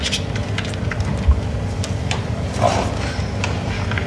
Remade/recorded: recorded